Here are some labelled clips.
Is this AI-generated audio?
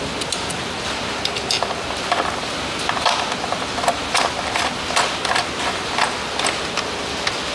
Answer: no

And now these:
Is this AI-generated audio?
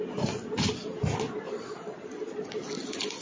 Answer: no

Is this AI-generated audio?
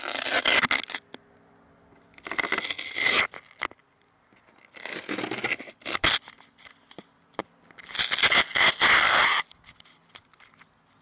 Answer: no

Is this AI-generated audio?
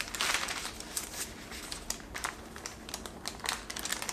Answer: no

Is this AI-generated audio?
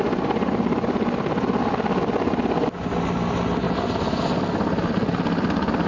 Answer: no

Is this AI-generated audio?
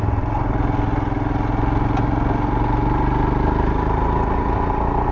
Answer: no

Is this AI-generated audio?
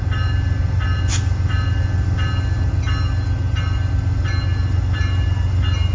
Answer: no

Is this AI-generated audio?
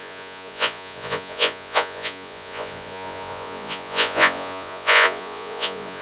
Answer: yes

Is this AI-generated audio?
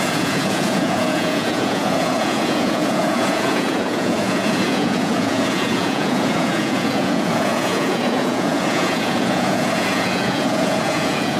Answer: yes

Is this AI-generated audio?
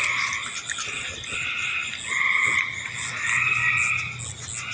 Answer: no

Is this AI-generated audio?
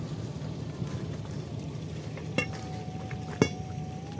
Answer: no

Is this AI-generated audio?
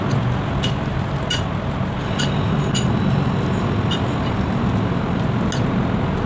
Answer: no